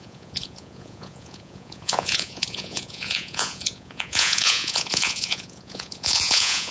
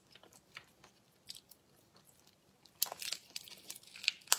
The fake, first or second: first